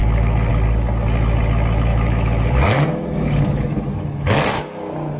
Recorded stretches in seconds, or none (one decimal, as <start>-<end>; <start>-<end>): 0.5-1.9